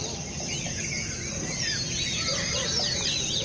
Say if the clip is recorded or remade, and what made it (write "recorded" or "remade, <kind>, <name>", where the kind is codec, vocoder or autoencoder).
recorded